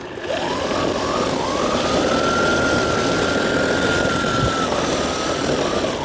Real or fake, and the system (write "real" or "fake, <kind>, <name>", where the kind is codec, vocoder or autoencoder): real